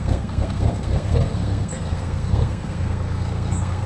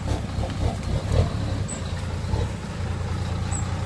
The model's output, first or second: first